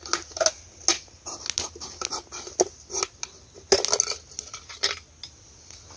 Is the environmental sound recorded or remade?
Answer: recorded